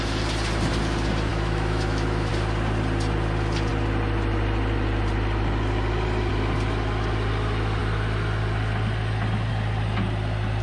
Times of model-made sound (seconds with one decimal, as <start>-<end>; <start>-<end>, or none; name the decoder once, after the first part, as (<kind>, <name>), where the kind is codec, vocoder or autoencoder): 1.3-2.3 (autoencoder, DAC-VAE)